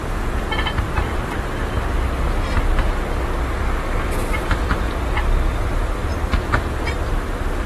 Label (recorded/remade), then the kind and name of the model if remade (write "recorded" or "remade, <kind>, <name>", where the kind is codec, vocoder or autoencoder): recorded